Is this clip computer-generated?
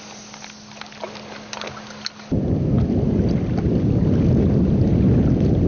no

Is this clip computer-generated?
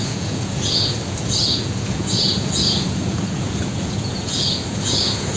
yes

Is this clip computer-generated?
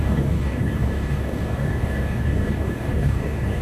yes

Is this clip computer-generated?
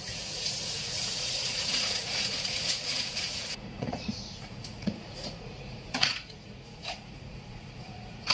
yes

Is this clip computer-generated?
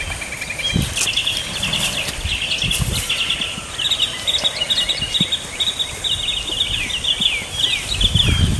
no